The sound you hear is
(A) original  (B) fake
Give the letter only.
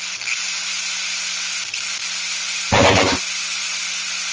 A